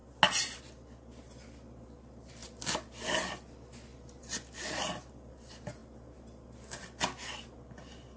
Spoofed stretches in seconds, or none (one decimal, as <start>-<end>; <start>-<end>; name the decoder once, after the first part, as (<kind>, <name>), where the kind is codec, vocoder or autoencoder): none